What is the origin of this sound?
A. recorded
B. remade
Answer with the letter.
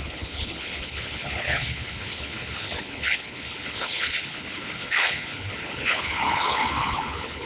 B